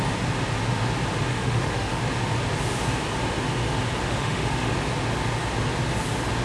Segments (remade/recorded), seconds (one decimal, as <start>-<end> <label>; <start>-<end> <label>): 0.0-1.3 recorded; 1.3-2.0 remade; 2.0-4.0 recorded; 4.0-4.7 remade; 4.7-6.4 recorded